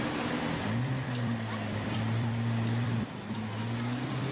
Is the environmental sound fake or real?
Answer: fake